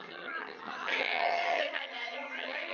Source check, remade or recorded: remade